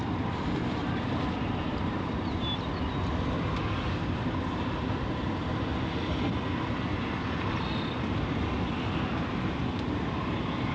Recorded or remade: recorded